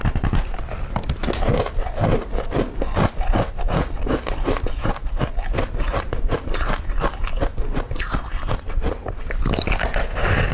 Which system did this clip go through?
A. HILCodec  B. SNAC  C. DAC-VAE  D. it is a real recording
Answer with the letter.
D